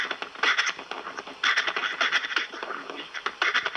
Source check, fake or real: real